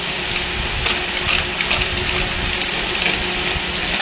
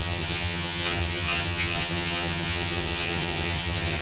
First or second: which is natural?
first